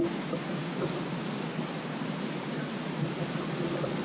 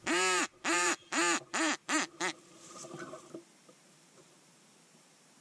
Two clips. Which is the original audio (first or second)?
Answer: first